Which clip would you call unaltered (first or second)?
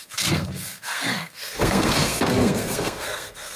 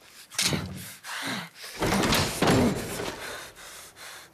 second